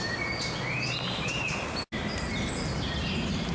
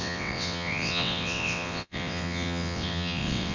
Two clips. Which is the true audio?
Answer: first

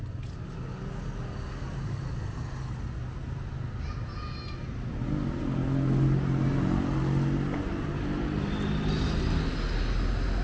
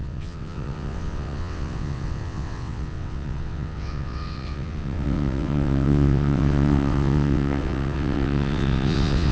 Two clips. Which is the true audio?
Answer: first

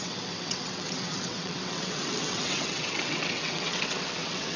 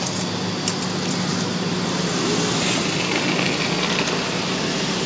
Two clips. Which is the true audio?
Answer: second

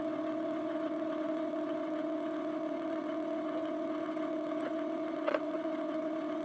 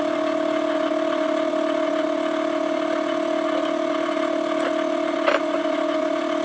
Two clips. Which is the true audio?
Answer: second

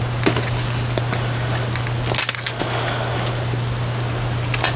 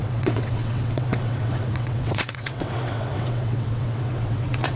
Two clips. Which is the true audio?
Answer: first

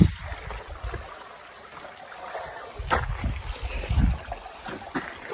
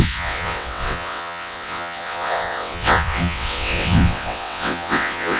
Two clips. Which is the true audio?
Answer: first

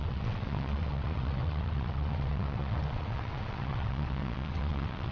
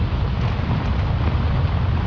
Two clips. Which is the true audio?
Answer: second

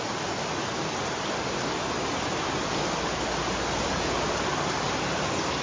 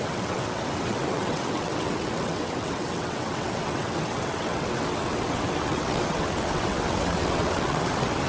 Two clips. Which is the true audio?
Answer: first